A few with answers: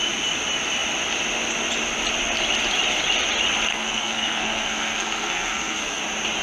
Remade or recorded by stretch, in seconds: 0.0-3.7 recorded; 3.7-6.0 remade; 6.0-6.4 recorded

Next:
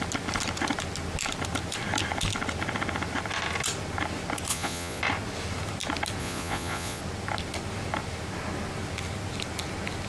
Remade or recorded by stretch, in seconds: 0.0-4.5 recorded; 4.5-5.0 remade; 5.0-6.2 recorded; 6.2-7.0 remade; 7.0-10.1 recorded

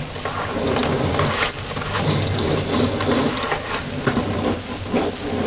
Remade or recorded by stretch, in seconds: 0.0-5.5 recorded

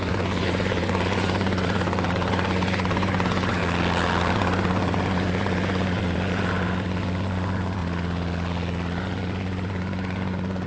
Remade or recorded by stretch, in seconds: 0.0-3.6 remade; 3.6-4.3 recorded; 4.3-7.8 remade; 7.8-9.0 recorded; 9.0-10.7 remade

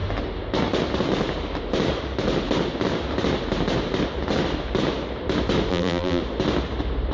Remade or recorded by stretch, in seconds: 0.0-5.7 recorded; 5.7-6.2 remade; 6.2-7.1 recorded